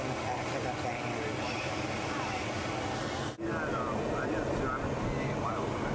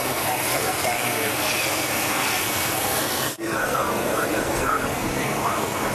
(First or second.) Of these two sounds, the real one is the first